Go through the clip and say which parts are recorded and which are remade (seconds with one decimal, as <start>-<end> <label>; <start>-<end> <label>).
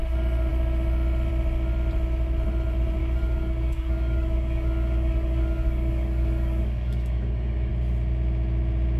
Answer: 0.0-3.0 recorded; 3.0-7.7 remade; 7.7-9.0 recorded